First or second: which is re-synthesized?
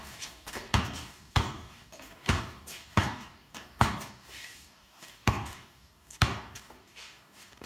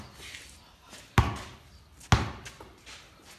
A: first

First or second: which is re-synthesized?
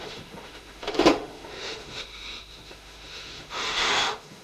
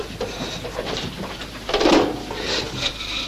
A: first